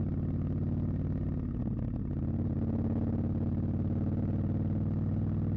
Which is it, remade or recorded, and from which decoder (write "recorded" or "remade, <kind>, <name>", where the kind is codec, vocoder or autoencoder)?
recorded